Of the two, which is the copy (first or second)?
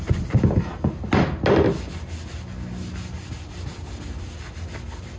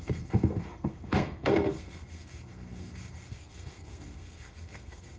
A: second